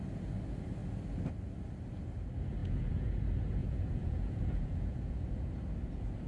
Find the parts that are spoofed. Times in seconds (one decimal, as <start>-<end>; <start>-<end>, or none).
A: 2.6-3.2; 3.6-5.5